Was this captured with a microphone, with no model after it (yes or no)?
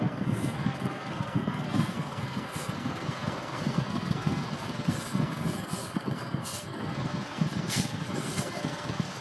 no